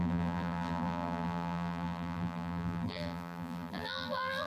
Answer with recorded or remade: remade